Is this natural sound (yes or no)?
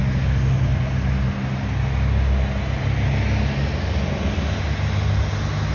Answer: yes